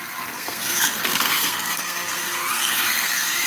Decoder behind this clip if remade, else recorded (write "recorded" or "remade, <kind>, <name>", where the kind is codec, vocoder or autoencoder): remade, codec, SNAC